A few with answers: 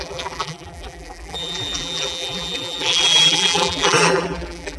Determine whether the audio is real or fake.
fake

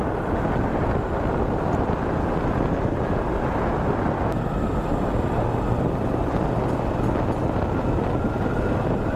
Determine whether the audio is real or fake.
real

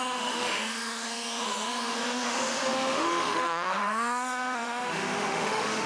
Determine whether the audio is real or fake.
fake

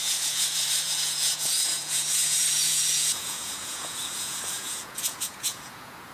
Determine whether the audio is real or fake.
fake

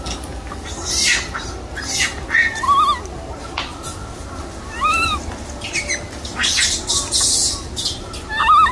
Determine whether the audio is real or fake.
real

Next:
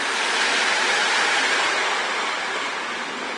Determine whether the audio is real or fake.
real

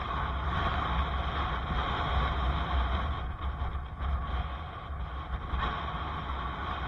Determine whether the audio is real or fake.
real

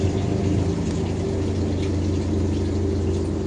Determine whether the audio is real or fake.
real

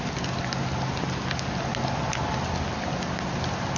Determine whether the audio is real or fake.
real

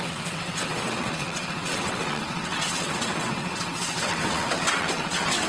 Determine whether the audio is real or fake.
fake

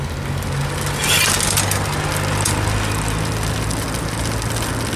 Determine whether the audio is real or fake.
real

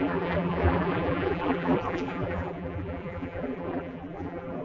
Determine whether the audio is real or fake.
fake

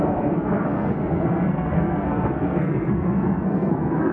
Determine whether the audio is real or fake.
fake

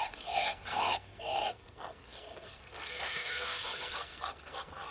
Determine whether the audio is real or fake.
fake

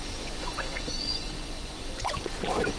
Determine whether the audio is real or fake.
fake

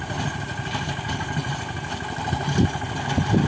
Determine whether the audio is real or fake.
real